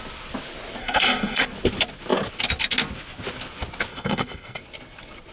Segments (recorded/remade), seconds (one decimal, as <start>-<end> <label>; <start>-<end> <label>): 0.0-0.8 recorded; 0.8-1.4 remade; 1.4-3.9 recorded; 3.9-4.6 remade; 4.6-5.3 recorded